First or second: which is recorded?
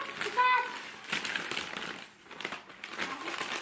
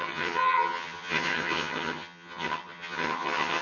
first